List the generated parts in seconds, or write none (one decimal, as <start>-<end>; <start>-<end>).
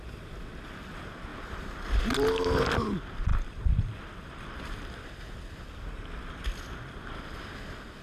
1.3-2.0; 3.3-5.2